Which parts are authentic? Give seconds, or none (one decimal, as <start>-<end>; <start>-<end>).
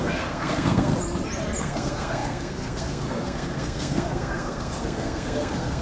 0.9-1.6